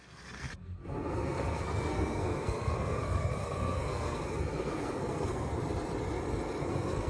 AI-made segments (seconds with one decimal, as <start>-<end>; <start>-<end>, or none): 0.0-5.5; 6.6-7.1